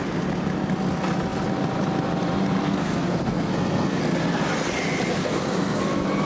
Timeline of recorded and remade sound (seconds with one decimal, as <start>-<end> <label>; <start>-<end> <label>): 0.0-2.6 recorded; 2.6-4.0 remade; 4.0-5.2 recorded; 5.2-5.8 remade; 5.8-6.3 recorded

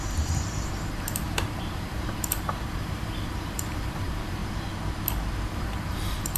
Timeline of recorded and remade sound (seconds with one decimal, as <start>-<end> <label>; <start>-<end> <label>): 0.0-4.4 remade; 4.4-5.5 recorded; 5.5-6.4 remade

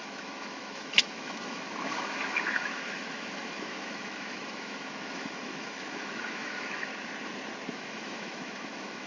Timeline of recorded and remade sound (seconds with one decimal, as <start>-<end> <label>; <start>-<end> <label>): 0.0-6.9 remade; 6.9-7.7 recorded; 7.7-9.1 remade

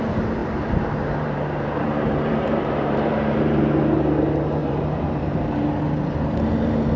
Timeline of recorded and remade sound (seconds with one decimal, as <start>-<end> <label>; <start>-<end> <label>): 0.0-0.4 recorded; 0.4-3.6 remade; 3.6-4.6 recorded; 4.6-5.8 remade; 5.8-7.0 recorded

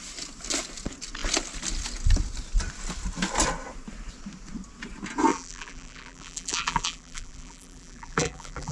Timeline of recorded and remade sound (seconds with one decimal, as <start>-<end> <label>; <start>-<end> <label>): 0.0-5.3 recorded; 5.3-8.7 remade